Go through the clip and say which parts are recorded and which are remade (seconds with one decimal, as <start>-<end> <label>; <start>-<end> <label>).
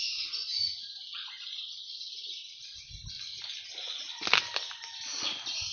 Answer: 0.0-5.7 recorded